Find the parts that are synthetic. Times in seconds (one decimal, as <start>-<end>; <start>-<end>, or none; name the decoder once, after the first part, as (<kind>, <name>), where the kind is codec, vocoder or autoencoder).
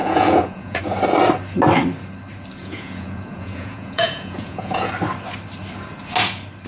0.0-0.8 (vocoder, Vocos); 2.6-4.9